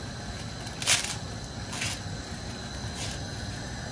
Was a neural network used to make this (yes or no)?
no